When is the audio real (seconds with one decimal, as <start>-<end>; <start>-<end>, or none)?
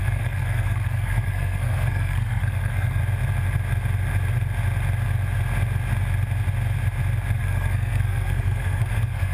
3.0-7.4